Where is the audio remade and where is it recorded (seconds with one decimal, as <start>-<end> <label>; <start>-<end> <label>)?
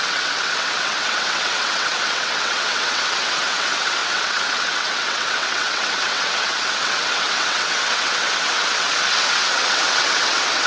0.0-10.7 remade